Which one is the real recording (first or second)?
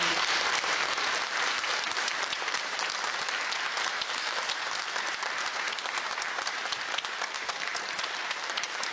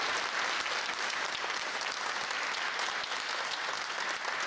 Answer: second